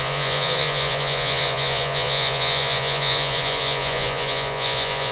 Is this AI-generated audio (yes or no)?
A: yes